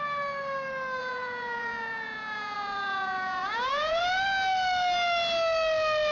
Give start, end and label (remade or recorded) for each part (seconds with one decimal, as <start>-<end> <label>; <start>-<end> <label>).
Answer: 0.0-1.0 recorded; 1.0-4.0 remade; 4.0-6.1 recorded